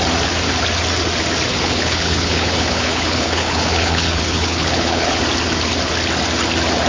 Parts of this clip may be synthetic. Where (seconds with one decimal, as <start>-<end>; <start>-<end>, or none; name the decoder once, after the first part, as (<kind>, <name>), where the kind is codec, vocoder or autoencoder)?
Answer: 1.5-5.2 (codec, HILCodec)